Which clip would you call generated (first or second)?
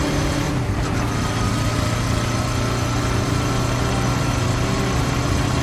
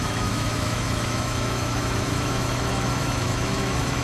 second